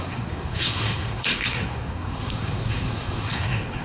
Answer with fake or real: fake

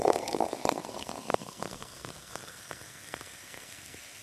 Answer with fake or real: fake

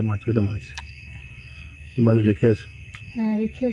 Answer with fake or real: fake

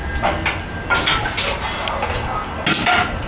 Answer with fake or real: real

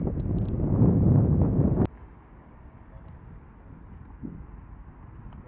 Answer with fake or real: real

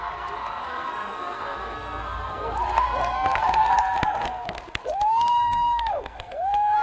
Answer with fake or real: fake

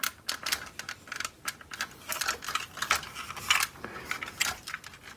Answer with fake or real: real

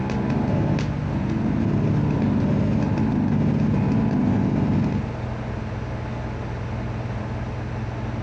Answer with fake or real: real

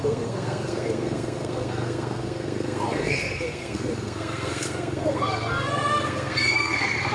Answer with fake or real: fake